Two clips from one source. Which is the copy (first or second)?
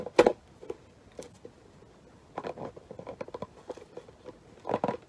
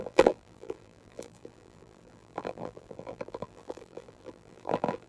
second